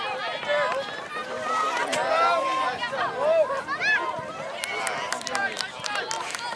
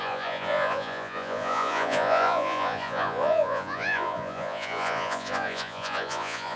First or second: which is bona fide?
first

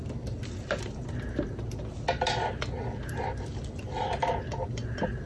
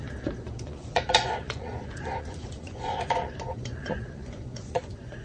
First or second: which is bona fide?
first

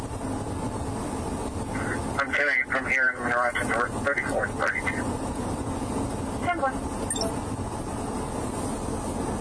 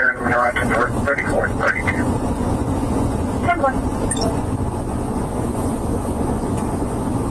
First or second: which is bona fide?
first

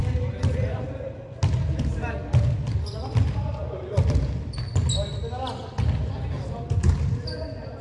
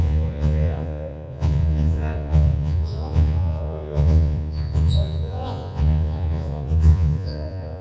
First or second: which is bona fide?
first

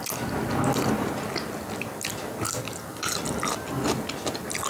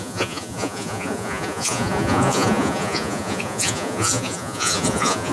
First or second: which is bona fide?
first